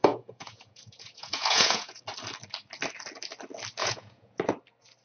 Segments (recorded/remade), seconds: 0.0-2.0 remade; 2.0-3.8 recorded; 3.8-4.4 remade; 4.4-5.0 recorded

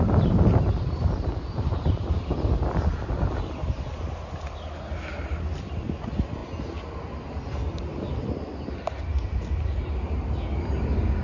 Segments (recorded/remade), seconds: 0.0-11.2 recorded

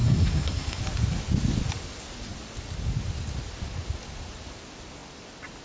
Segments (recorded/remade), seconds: 0.0-0.8 remade; 0.8-5.6 recorded

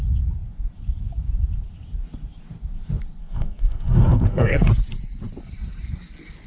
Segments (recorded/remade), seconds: 0.0-3.2 recorded; 3.2-4.7 remade; 4.7-6.5 recorded

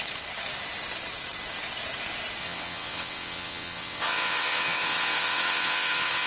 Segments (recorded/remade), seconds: 0.0-2.4 recorded; 2.4-6.3 remade